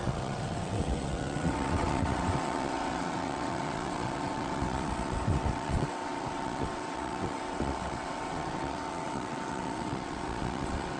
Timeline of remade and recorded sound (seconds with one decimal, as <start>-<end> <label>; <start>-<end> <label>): 0.0-11.0 remade

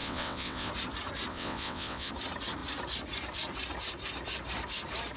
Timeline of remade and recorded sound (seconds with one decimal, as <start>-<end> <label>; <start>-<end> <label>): 0.0-0.7 remade; 0.7-1.3 recorded; 1.3-2.1 remade; 2.1-5.2 recorded

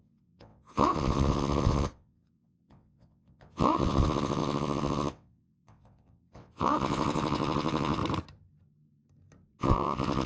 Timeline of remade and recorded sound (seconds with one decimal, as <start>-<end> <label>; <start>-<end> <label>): 0.0-8.0 remade; 8.0-9.6 recorded; 9.6-10.3 remade